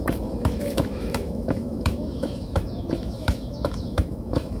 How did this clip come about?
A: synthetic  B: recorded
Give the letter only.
A